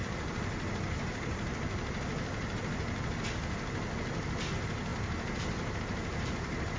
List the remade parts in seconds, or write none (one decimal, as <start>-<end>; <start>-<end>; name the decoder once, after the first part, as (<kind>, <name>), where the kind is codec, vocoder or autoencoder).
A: 0.0-2.6 (vocoder, BigVGAN v2); 4.9-5.8